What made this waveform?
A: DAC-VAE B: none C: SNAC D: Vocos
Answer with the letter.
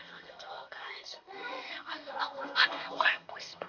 C